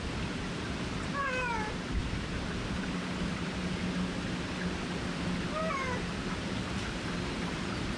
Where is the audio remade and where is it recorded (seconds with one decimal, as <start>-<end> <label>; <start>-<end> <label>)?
0.0-8.0 recorded